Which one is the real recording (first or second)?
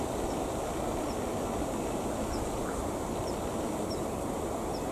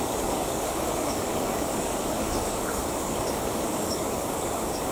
first